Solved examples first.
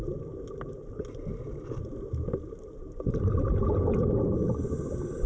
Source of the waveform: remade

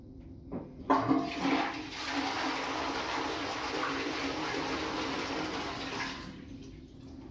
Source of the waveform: recorded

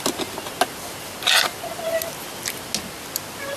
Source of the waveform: recorded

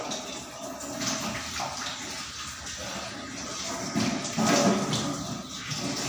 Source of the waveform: recorded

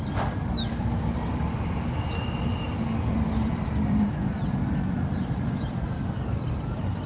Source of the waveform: remade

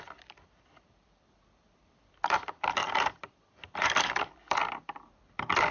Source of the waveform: remade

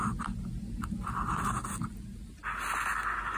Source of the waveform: recorded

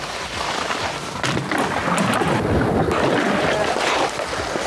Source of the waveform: recorded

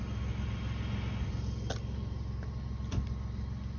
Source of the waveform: recorded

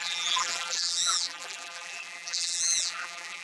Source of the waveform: remade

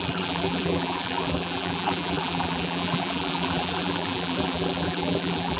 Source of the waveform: remade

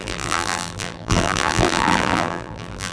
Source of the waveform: remade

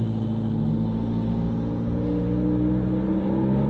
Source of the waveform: recorded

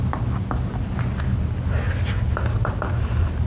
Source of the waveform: recorded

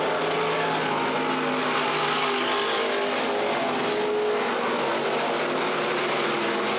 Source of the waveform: recorded